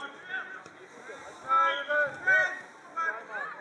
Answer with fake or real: real